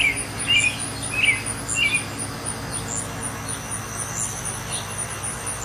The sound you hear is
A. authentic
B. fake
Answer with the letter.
A